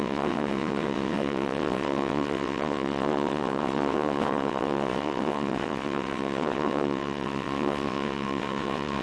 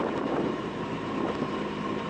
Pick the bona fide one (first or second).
second